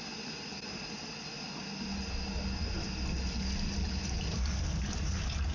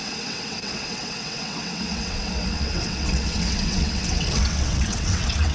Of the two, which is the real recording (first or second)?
first